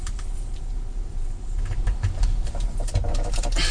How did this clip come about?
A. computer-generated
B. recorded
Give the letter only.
A